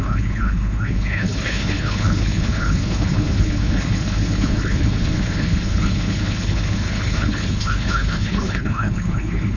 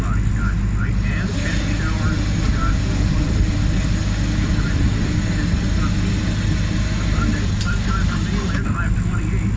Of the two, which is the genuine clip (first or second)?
second